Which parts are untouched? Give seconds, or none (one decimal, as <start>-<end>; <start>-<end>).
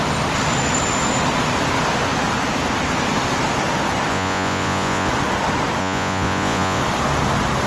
0.0-4.1; 5.1-5.8; 6.8-7.7